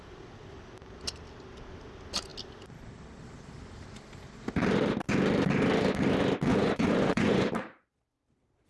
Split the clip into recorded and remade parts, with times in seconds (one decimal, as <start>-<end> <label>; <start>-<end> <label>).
0.0-6.5 recorded; 6.5-7.5 remade; 7.5-8.7 recorded